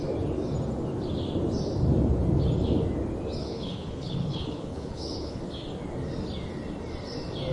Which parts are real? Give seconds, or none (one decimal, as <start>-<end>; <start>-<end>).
0.0-3.4; 5.4-7.5